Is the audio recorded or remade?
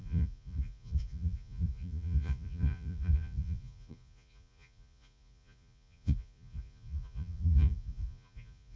remade